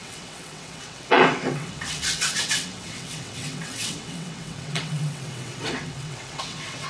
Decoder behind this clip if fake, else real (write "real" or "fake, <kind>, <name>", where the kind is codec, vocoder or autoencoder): fake, vocoder, WaveNeXt